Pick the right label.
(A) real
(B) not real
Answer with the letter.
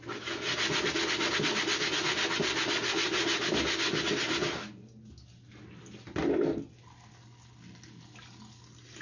A